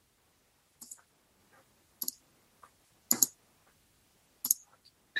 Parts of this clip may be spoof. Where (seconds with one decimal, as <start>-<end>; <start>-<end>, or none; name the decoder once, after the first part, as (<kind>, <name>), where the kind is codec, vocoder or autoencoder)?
none